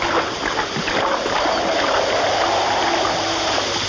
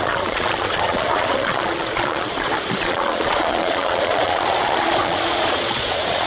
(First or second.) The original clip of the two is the first